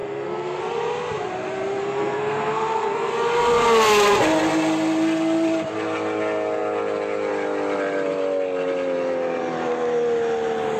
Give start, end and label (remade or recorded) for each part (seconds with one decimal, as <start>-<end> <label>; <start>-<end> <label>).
0.0-0.6 remade; 0.6-1.8 recorded; 1.8-3.1 remade; 3.1-10.8 recorded